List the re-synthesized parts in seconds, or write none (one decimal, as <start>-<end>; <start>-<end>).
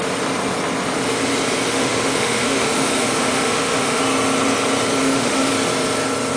1.7-4.0; 5.0-5.5